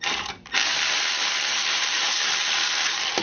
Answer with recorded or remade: remade